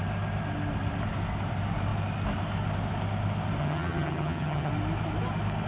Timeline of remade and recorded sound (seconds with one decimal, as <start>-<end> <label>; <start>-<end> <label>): 0.0-3.6 recorded; 3.6-4.7 remade; 4.7-5.7 recorded